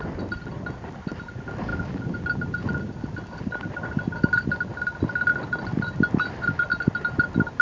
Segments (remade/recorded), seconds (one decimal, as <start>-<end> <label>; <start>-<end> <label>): 0.0-7.6 recorded